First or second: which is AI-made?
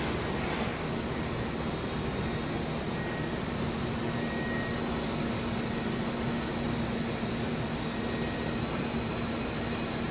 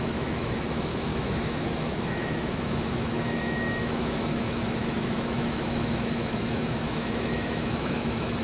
second